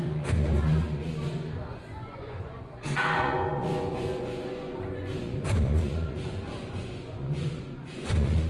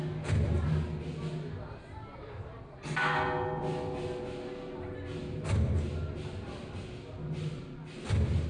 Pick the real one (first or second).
second